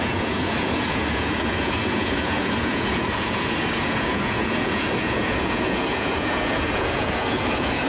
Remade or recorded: remade